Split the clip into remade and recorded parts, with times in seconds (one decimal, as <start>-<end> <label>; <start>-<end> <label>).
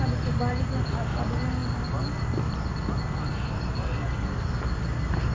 0.0-5.3 recorded